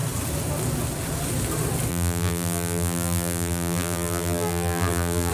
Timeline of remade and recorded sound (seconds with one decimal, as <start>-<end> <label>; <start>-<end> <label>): 0.0-1.9 recorded; 1.9-5.3 remade